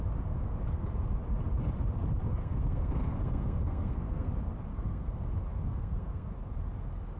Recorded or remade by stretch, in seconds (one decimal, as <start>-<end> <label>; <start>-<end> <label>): 0.0-2.3 recorded; 2.3-4.3 remade; 4.3-4.7 recorded; 4.7-5.3 remade; 5.3-5.7 recorded; 5.7-6.3 remade; 6.3-7.2 recorded